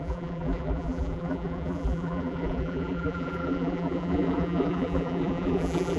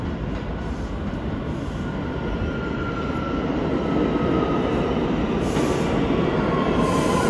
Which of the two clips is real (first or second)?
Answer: second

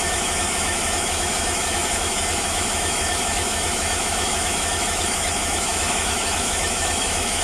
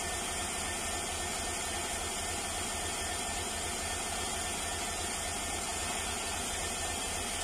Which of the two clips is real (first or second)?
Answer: second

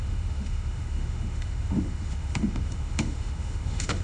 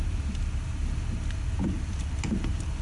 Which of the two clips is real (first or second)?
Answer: second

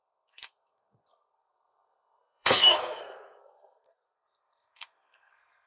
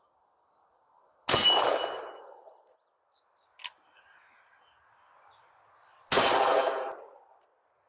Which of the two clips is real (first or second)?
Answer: second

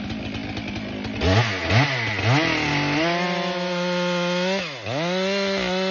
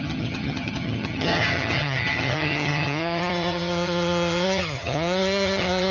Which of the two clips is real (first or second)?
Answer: first